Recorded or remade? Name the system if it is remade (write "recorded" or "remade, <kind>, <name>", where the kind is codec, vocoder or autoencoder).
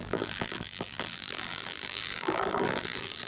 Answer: remade, vocoder, BigVGAN v2